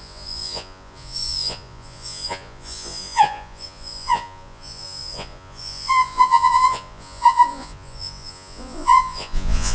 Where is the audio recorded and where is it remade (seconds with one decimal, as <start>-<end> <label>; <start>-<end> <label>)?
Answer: 0.0-9.7 remade